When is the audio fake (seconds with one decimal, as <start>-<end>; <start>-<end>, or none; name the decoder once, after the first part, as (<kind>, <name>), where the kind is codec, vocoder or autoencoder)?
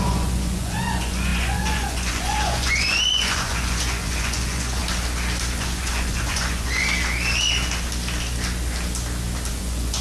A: 0.0-4.8 (vocoder, Vocos); 5.6-6.8; 9.5-10.0